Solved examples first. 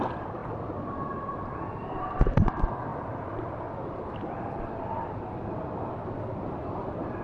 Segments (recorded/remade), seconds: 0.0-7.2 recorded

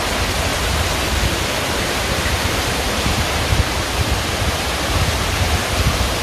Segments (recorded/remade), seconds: 0.0-0.5 recorded; 0.5-4.2 remade; 4.2-6.2 recorded

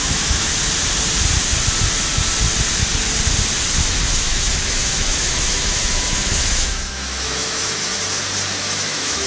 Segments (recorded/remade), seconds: 0.0-0.5 remade; 0.5-4.1 recorded; 4.1-7.9 remade; 7.9-8.6 recorded; 8.6-9.3 remade

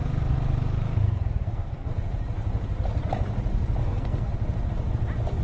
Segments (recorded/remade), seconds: 0.0-1.0 recorded; 1.0-1.9 remade; 1.9-3.8 recorded; 3.8-4.3 remade; 4.3-5.4 recorded

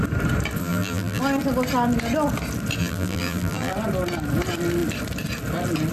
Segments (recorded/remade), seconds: 0.0-0.6 recorded; 0.6-1.2 remade; 1.2-2.8 recorded; 2.8-3.7 remade; 3.7-5.9 recorded

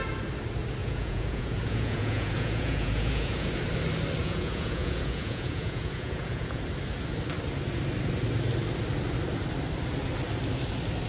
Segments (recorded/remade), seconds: 0.0-0.8 recorded; 0.8-3.5 remade; 3.5-4.2 recorded; 4.2-6.6 remade; 6.6-11.1 recorded